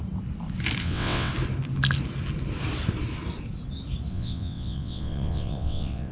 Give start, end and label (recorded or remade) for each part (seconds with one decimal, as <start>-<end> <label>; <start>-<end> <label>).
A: 0.0-0.8 recorded; 0.8-1.3 remade; 1.3-4.1 recorded; 4.1-6.1 remade